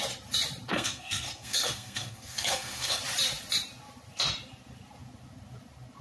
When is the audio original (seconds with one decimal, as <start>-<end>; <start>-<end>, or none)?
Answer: 0.0-0.7; 3.0-6.0